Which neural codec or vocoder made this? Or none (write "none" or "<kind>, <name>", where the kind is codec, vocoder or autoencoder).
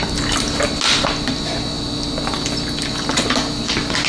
none